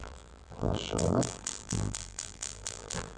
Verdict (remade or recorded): remade